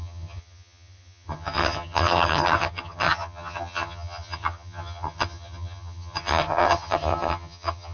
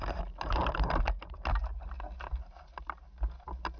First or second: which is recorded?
second